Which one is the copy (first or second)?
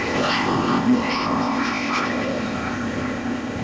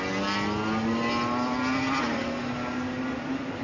first